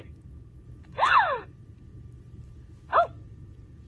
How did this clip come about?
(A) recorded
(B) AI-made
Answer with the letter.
A